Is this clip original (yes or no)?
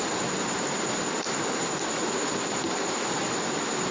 yes